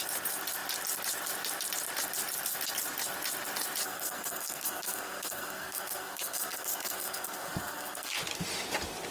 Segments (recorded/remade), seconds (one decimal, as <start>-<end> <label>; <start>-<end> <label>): 0.0-3.8 recorded; 3.8-8.1 remade; 8.1-9.1 recorded